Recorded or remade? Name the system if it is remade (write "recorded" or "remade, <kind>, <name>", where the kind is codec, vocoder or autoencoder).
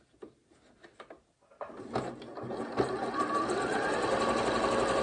recorded